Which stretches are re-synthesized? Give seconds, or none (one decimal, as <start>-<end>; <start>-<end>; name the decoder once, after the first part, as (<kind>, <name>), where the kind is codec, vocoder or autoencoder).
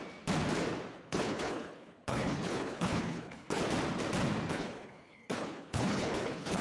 0.9-3.6 (codec, HILCodec); 4.5-6.6